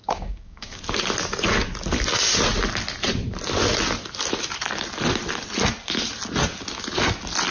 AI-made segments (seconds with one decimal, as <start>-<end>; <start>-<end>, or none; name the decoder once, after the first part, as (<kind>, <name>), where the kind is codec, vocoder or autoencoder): 0.0-0.8 (codec, DAC)